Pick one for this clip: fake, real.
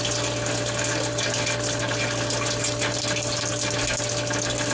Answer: real